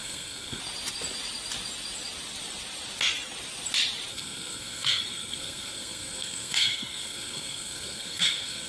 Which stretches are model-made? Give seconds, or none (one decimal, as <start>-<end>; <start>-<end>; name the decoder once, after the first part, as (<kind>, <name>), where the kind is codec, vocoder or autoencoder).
0.0-0.6 (codec, SNAC); 4.1-8.7